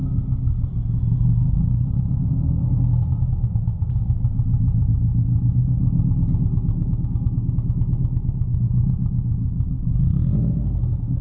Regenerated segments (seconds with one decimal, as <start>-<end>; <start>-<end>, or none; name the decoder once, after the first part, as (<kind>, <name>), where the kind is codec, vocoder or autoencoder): 6.7-7.5 (codec, SNAC)